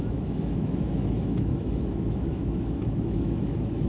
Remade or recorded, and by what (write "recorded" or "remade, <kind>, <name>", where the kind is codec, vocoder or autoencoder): remade, autoencoder, DAC-VAE